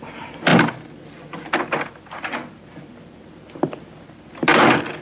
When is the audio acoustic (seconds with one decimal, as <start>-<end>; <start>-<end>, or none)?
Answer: 0.0-5.0

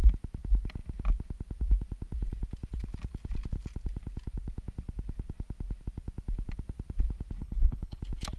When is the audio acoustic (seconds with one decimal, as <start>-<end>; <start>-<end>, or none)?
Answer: 0.0-7.4; 8.0-8.4

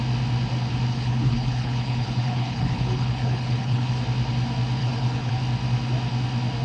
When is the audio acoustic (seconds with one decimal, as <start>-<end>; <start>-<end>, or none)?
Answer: 0.0-0.9; 3.9-4.8; 5.3-6.6

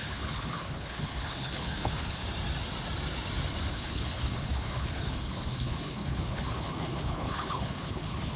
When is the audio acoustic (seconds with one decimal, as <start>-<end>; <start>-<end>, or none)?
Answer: 2.2-3.7

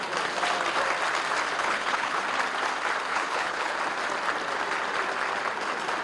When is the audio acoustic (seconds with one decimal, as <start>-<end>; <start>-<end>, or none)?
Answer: 0.0-1.6; 2.2-3.1; 3.8-6.0

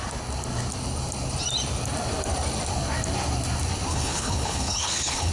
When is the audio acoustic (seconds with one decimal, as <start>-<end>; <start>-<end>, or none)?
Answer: 0.0-3.9

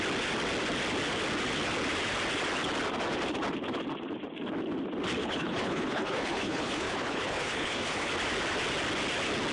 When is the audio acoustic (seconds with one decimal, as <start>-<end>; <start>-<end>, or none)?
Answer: 0.0-5.2; 8.1-9.5